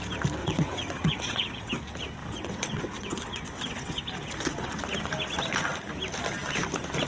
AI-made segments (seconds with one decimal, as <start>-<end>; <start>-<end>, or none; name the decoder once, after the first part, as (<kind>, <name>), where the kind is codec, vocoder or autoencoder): 0.4-1.7 (vocoder, WaveNeXt); 2.2-4.0